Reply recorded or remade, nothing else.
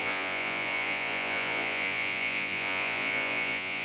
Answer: remade